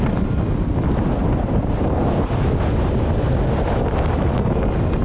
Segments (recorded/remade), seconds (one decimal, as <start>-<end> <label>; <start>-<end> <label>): 0.0-5.0 recorded